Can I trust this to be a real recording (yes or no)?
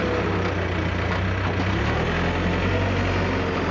yes